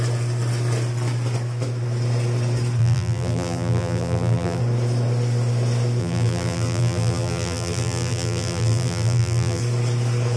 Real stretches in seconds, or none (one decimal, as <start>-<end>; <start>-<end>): 0.0-2.8; 4.6-6.0; 9.6-10.4

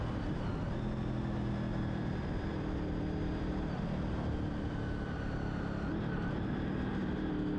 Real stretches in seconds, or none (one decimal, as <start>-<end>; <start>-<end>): 0.0-1.7; 6.3-7.6

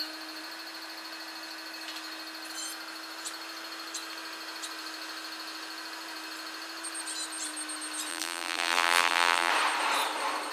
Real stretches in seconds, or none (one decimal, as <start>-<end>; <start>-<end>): 0.0-8.1; 9.5-10.5

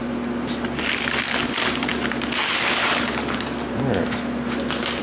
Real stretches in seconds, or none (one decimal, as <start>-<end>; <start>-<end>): 0.0-5.0

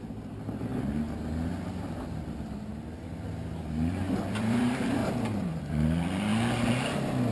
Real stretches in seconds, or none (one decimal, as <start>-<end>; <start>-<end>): 0.7-1.5; 2.7-3.6; 6.3-7.3

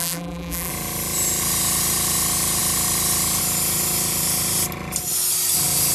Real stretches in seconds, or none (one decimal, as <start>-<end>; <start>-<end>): 0.7-5.9

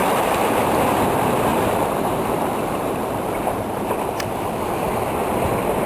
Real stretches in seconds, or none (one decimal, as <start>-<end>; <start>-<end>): 0.7-1.5; 4.2-5.9

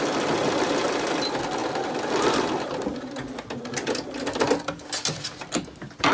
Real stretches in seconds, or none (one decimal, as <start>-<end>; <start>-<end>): 1.6-5.3